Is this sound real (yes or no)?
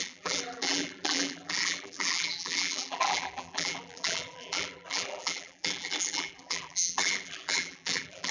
no